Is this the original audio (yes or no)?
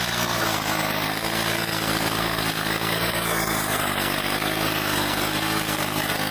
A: no